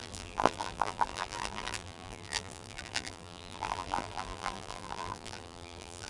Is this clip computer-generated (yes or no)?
yes